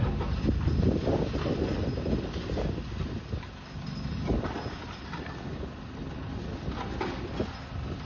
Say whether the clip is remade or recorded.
recorded